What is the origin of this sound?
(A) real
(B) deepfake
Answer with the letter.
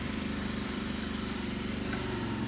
B